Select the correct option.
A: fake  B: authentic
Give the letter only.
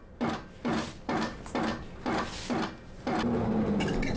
B